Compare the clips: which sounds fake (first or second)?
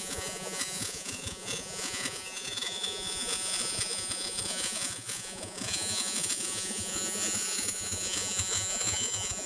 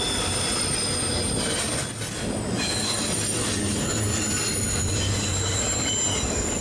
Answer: first